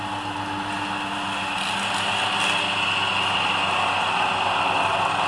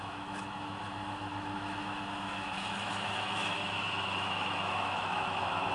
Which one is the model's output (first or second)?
second